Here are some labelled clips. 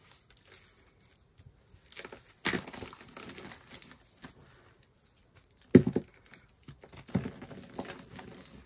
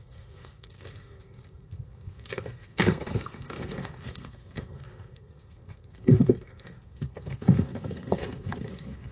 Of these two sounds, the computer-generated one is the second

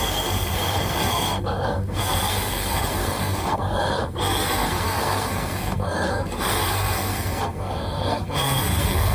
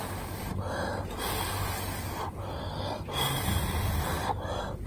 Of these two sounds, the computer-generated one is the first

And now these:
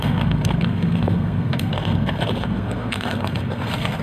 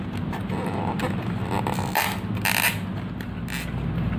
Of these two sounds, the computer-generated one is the first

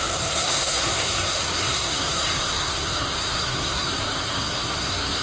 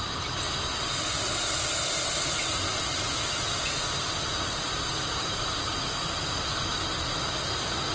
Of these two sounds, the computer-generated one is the first